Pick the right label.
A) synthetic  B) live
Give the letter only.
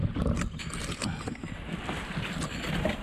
B